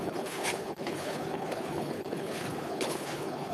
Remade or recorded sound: remade